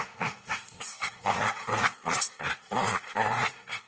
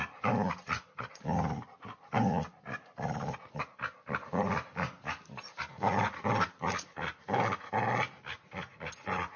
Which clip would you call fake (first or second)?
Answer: first